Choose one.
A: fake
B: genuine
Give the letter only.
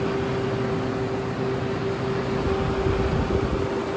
B